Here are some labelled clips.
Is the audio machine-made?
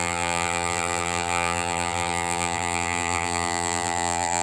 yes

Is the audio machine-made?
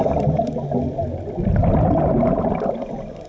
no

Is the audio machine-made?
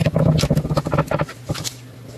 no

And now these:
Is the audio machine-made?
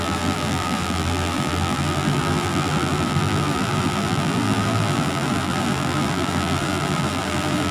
yes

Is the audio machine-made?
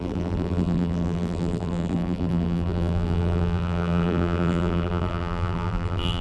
yes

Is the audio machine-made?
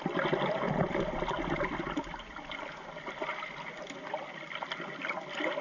no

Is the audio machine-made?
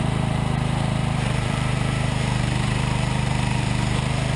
yes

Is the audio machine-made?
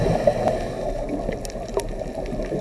no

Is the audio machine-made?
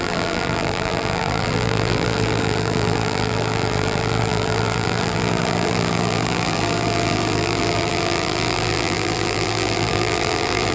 yes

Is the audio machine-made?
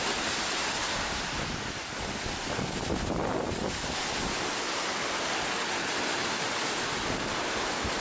no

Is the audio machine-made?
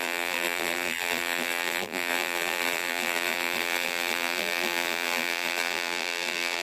yes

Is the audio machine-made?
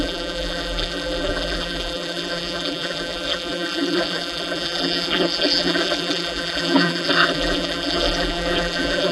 yes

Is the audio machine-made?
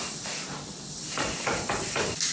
yes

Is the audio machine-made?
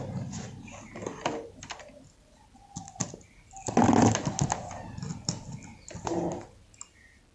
no